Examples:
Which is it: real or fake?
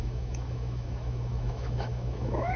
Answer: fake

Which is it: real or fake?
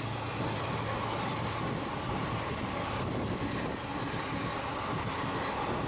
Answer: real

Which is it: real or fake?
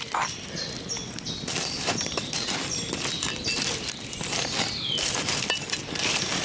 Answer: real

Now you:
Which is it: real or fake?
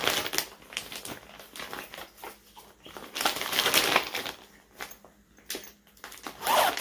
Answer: real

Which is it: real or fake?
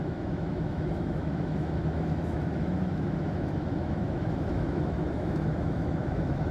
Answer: fake